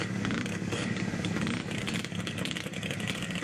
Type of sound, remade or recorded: remade